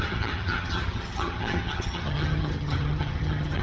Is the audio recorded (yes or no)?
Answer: no